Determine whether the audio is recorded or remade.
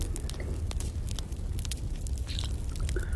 recorded